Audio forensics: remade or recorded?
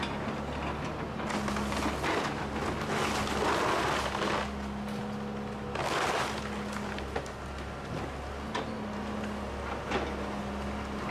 recorded